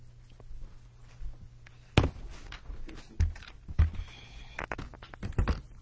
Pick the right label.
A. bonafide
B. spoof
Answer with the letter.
A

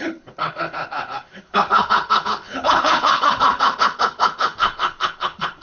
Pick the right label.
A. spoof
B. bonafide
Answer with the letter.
A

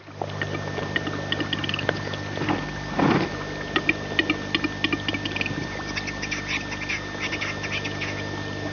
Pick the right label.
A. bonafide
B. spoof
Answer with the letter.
A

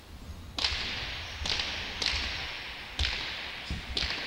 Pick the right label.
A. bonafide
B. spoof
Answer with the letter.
A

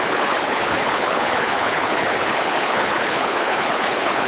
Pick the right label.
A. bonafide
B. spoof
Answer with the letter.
B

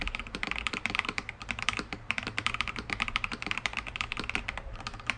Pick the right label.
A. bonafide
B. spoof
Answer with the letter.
B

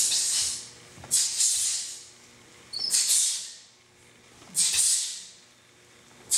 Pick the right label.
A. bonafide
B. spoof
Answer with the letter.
A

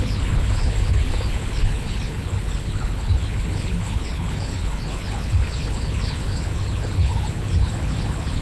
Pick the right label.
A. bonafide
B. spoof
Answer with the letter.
B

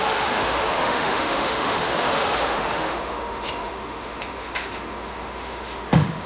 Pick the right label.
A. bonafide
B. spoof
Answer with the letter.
B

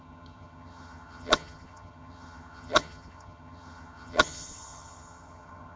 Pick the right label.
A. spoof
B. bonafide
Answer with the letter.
A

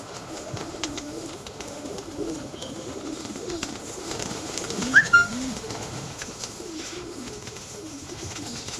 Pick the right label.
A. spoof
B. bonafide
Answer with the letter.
A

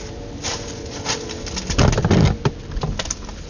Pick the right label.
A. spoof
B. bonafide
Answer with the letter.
B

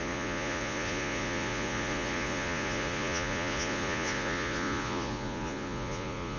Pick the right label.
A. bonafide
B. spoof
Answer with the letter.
B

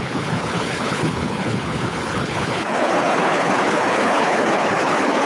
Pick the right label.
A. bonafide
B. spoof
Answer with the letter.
B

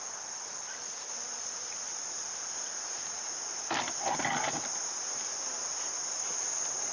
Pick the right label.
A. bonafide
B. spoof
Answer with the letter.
A